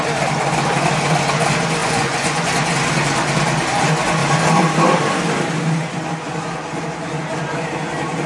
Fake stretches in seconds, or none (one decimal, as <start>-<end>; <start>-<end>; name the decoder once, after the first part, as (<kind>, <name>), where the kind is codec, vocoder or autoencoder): 1.8-2.5 (vocoder, Vocos)